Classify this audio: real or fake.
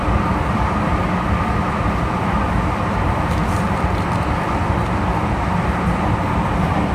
fake